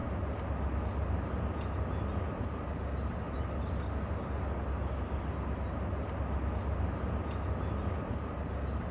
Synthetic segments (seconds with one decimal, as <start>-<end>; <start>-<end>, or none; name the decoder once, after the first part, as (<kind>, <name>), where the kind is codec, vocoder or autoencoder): none